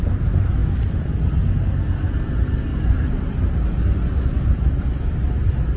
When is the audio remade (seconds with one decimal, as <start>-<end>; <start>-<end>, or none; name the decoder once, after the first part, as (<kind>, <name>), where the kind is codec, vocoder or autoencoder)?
none